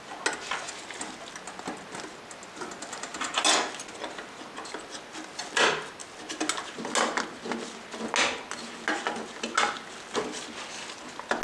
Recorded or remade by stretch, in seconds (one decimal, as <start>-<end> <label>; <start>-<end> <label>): 0.0-11.4 recorded